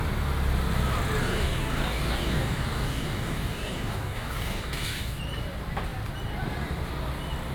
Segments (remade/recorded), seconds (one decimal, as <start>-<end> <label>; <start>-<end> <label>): 0.0-1.2 recorded; 1.2-5.2 remade; 5.2-7.5 recorded